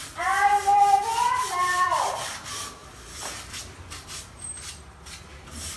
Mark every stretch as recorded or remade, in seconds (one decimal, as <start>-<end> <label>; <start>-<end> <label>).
0.0-1.1 recorded; 1.1-2.3 remade; 2.3-2.8 recorded; 2.8-5.8 remade